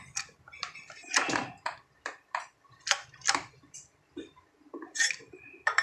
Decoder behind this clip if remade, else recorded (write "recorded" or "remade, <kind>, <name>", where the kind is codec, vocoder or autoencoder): remade, vocoder, BigVGAN v2